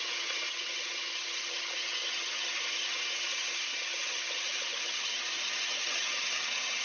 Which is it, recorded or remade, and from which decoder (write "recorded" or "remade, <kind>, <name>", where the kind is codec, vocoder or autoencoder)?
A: remade, vocoder, HiFi-GAN